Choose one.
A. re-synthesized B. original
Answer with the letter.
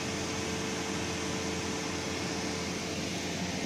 B